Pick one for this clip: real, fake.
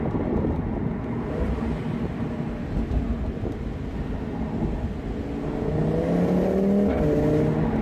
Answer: real